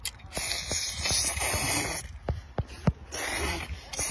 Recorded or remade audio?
recorded